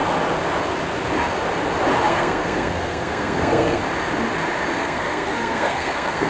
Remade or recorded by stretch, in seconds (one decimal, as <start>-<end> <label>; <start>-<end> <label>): 0.0-2.1 recorded; 2.1-3.8 remade; 3.8-4.8 recorded; 4.8-6.3 remade